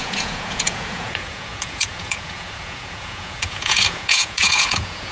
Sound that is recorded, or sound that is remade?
remade